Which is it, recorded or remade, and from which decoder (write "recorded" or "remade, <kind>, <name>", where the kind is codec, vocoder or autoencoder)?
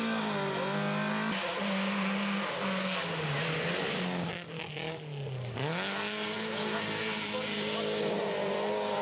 recorded